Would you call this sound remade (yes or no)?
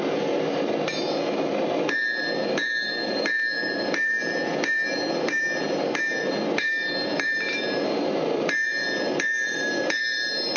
yes